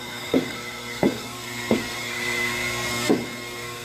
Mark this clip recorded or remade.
remade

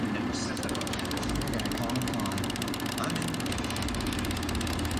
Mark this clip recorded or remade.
recorded